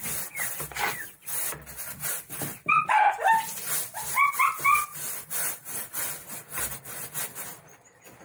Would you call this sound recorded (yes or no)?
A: yes